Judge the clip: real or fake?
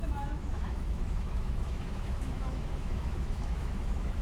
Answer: fake